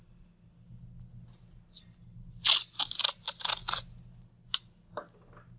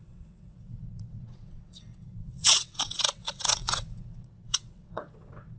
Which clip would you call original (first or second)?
first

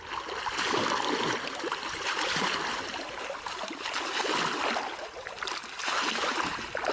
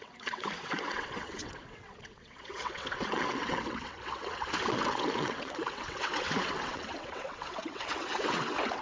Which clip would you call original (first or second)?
first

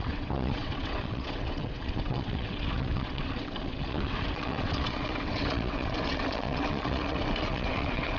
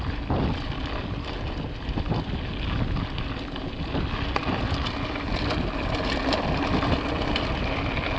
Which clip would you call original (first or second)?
second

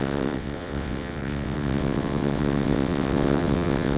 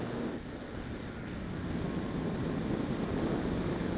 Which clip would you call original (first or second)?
second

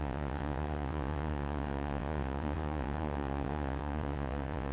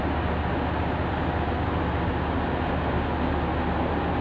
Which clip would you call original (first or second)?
second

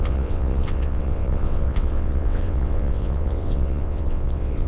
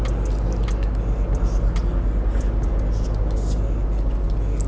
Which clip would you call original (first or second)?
second